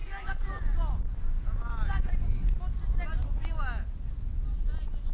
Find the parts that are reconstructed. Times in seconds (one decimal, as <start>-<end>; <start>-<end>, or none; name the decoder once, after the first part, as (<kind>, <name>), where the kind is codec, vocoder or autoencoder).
none

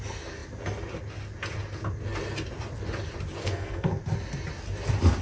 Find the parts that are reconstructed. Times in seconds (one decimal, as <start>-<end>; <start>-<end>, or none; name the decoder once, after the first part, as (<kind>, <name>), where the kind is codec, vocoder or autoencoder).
3.4-4.0 (codec, SNAC)

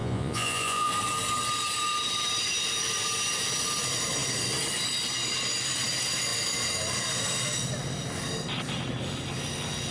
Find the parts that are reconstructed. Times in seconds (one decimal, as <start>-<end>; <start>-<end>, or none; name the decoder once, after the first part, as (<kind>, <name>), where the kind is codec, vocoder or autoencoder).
0.0-0.9 (vocoder, Vocos)

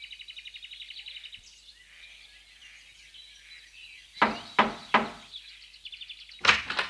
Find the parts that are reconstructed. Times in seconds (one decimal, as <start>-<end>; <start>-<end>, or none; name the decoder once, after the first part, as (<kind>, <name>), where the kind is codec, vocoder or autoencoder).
none

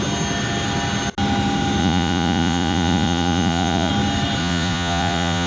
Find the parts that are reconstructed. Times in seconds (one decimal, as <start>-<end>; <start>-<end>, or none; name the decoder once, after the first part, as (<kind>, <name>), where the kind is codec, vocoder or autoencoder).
1.8-3.9 (vocoder, Vocos); 4.4-5.5